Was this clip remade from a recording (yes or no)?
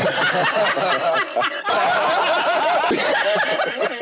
no